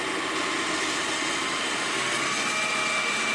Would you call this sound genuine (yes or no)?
yes